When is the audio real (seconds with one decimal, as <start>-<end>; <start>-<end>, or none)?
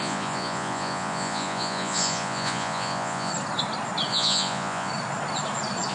3.3-4.1; 4.9-5.9